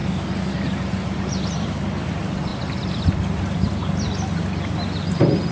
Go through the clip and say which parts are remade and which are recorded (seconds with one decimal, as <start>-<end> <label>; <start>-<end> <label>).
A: 0.0-2.5 recorded; 2.5-3.0 remade; 3.0-5.5 recorded